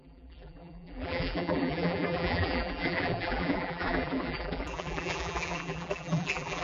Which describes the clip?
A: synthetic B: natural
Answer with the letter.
A